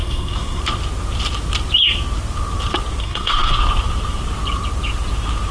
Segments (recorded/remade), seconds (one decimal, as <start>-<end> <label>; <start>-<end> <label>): 0.0-0.6 remade; 0.6-3.0 recorded; 3.0-3.6 remade; 3.6-5.5 recorded